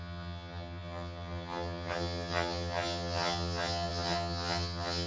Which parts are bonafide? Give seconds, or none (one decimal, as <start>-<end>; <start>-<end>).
none